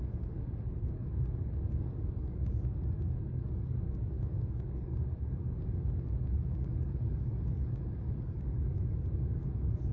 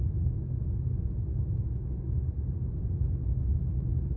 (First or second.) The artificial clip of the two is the first